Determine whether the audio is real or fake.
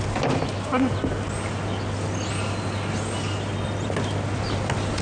real